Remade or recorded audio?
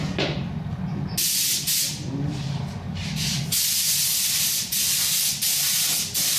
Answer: recorded